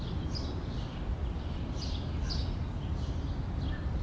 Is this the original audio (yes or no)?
yes